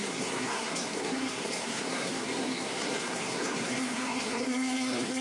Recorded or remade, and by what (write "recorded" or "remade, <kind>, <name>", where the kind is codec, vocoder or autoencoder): remade, codec, SNAC